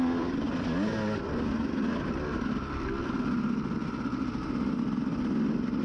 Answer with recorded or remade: recorded